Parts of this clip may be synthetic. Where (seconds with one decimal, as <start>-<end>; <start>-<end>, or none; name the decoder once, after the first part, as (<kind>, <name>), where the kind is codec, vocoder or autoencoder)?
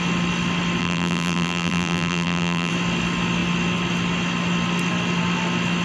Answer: 0.8-2.7 (vocoder, BigVGAN v2)